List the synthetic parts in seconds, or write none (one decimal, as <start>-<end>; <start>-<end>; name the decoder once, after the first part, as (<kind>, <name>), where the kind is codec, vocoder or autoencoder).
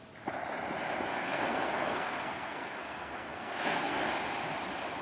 1.1-4.1 (codec, SNAC)